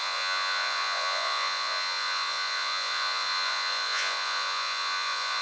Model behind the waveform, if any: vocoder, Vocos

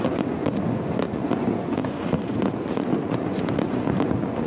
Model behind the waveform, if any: vocoder, Vocos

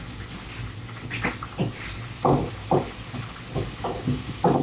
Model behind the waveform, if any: none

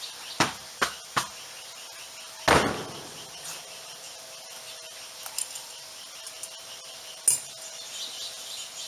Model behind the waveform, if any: none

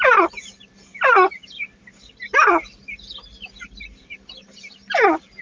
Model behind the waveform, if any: none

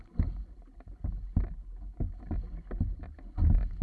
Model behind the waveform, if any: none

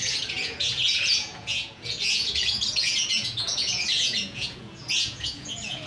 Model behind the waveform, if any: vocoder, Vocos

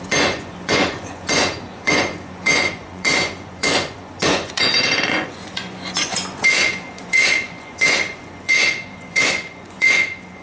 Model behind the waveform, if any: vocoder, Vocos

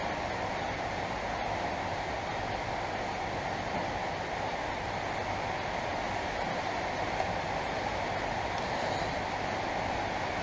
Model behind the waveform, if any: none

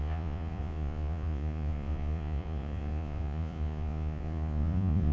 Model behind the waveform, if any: vocoder, Vocos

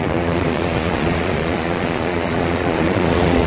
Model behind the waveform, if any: vocoder, Vocos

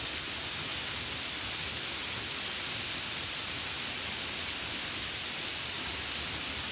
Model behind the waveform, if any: none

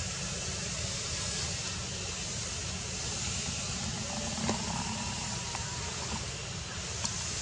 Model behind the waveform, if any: none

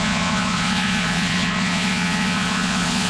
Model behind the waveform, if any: vocoder, Vocos